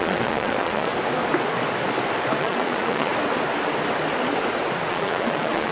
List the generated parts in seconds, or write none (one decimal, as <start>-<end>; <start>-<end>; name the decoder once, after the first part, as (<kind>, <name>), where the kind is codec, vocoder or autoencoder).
0.0-0.9 (vocoder, Vocos); 2.4-3.1; 4.9-5.7